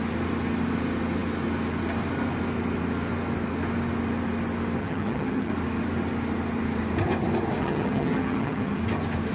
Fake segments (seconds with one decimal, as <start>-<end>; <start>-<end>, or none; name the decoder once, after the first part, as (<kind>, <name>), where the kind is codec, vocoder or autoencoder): 4.8-5.5 (vocoder, HiFi-GAN); 7.6-8.8